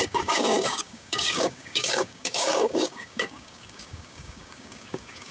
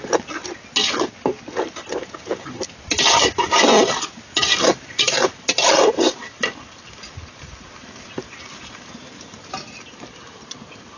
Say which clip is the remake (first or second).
first